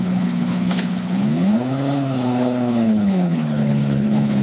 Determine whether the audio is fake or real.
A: fake